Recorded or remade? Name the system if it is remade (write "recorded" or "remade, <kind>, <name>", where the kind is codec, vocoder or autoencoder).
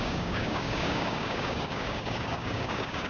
remade, codec, DAC